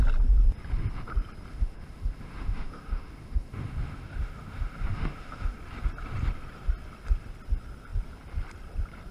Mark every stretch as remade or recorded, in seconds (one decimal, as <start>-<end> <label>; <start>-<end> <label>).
0.0-1.5 recorded; 1.5-5.6 remade; 5.6-9.1 recorded